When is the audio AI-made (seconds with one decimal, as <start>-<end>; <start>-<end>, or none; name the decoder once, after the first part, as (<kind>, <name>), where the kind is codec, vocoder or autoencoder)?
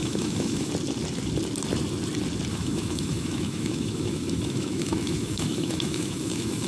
0.0-0.7 (autoencoder, DAC-VAE); 2.5-6.7